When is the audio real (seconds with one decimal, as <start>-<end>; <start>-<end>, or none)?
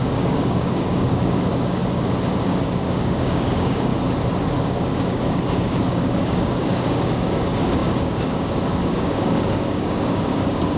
1.8-2.5; 3.9-4.6